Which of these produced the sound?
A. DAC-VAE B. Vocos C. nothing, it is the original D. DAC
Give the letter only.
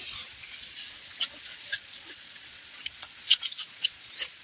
B